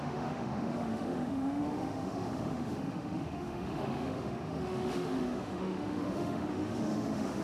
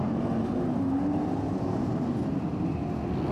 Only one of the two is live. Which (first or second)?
second